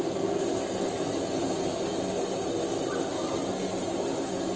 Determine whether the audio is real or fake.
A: real